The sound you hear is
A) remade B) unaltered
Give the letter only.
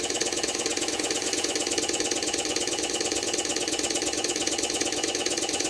A